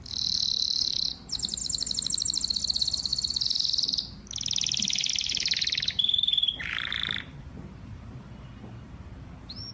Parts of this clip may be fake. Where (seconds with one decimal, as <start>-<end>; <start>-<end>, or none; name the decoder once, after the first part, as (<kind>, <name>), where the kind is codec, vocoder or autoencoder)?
0.0-1.6 (vocoder, BigVGAN v2); 2.6-3.1; 5.1-9.7